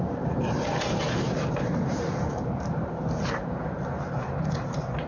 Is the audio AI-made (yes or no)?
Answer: yes